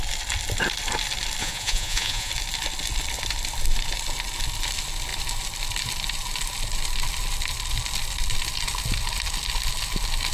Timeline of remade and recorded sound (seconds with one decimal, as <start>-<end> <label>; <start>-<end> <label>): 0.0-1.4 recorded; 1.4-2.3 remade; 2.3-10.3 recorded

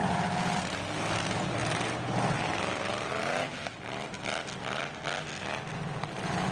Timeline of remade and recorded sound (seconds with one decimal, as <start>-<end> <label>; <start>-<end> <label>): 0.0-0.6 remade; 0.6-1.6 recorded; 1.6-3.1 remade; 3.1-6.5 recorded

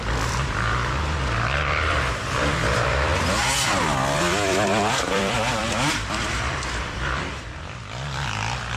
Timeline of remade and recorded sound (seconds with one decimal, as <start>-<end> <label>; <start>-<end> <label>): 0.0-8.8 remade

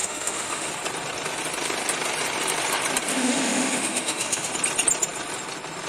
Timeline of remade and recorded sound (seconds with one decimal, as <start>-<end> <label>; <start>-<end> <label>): 0.0-0.7 remade; 0.7-3.1 recorded; 3.1-4.5 remade; 4.5-5.9 recorded